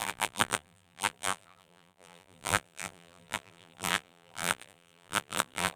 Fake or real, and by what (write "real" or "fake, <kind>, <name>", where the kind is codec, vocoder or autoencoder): fake, vocoder, BigVGAN v2